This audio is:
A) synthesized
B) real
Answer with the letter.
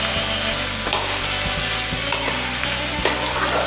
B